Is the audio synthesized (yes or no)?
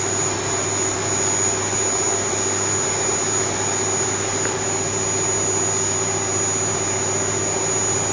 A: no